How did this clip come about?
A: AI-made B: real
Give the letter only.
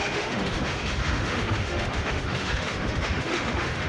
A